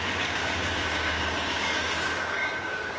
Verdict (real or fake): fake